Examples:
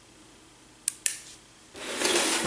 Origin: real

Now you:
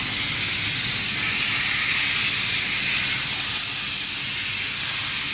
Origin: real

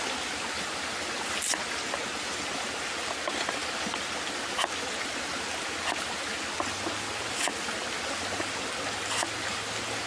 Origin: real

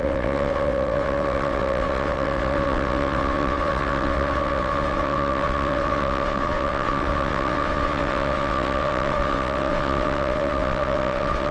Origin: fake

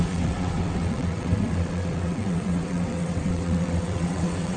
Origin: fake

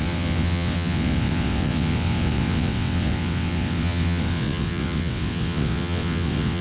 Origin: fake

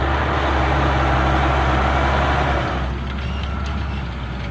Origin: real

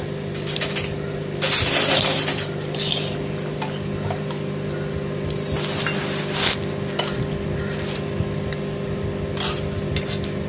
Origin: real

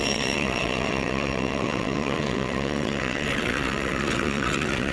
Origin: fake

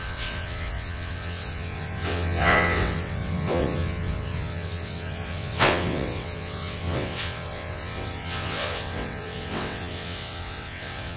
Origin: fake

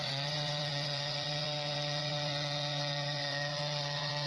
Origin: fake